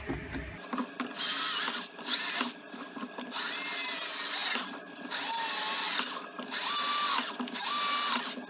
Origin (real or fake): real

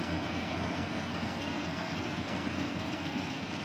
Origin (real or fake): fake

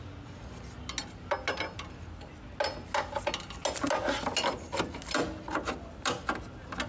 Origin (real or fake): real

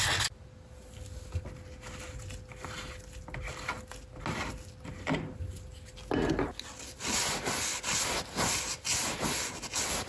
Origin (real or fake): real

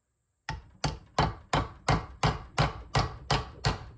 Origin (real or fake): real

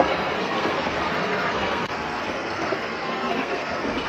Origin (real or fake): fake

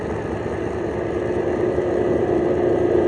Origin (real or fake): real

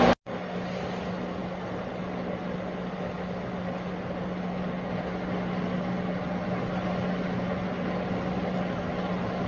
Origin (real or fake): real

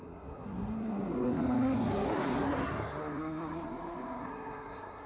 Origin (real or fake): fake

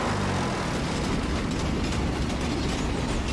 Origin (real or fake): real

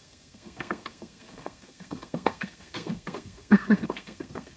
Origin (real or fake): fake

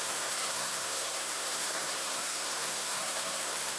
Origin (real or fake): fake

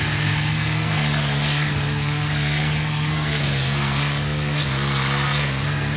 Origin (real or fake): fake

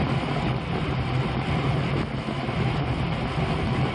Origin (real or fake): real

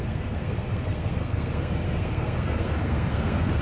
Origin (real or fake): fake